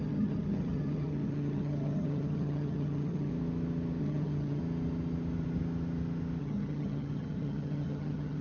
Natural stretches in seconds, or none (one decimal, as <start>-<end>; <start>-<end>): 3.3-4.0; 4.6-6.4